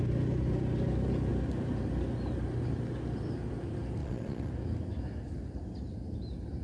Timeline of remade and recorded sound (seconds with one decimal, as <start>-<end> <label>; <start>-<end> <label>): 0.0-4.0 recorded; 4.0-4.5 remade; 4.5-6.6 recorded